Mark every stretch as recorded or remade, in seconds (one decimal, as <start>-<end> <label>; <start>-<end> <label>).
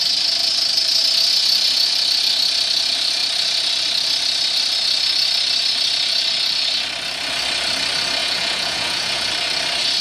0.0-8.2 recorded; 8.2-9.3 remade; 9.3-10.0 recorded